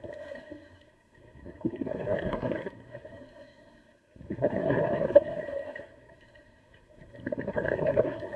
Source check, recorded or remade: remade